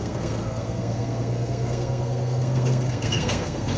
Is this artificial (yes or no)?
yes